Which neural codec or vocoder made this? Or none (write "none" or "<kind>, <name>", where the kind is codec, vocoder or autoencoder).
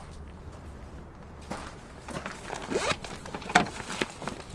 none